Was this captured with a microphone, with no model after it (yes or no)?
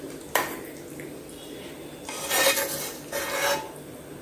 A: yes